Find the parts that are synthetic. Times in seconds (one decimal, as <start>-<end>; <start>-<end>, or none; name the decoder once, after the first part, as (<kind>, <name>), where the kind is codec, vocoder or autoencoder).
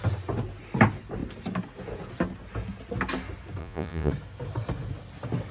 3.6-4.1 (vocoder, Vocos)